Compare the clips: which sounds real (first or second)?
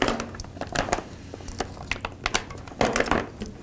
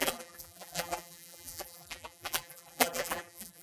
first